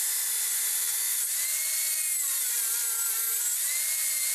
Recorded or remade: remade